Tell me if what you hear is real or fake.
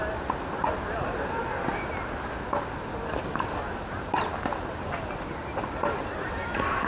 real